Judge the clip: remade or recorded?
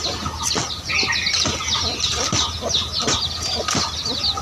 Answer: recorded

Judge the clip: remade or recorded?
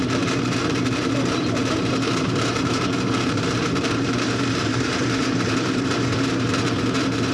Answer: remade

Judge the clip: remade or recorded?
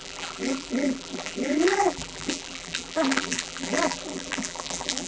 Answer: remade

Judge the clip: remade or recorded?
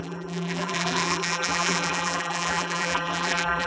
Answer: remade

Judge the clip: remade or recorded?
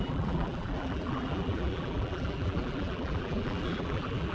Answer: remade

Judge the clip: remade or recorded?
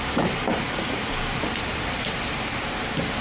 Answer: remade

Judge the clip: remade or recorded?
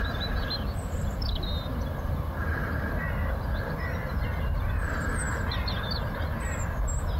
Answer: recorded